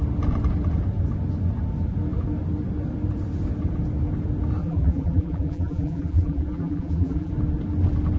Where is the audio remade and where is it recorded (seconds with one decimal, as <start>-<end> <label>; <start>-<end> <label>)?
0.0-4.6 recorded; 4.6-7.3 remade; 7.3-8.2 recorded